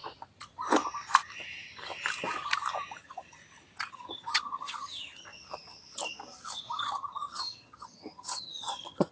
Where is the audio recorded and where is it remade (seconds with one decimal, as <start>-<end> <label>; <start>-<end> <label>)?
0.0-3.0 recorded; 3.0-3.4 remade; 3.4-3.9 recorded; 3.9-5.3 remade; 5.3-6.8 recorded; 6.8-9.1 remade

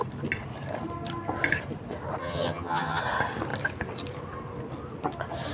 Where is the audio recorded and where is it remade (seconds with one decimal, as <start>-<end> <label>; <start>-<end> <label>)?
0.0-2.2 recorded; 2.2-3.0 remade; 3.0-5.5 recorded

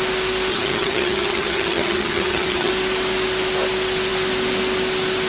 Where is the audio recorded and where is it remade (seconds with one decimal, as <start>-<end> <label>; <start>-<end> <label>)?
0.0-0.5 recorded; 0.5-2.7 remade; 2.7-5.3 recorded

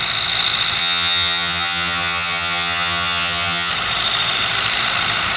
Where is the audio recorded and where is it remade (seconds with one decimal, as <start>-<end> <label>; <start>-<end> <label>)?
0.0-0.8 recorded; 0.8-3.7 remade; 3.7-5.4 recorded

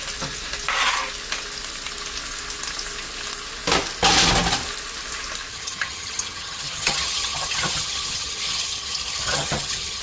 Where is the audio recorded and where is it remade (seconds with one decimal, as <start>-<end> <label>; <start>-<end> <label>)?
0.0-5.5 recorded; 5.5-10.0 remade